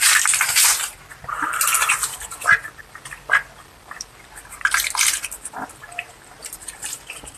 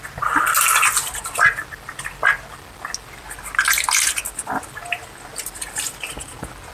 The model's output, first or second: first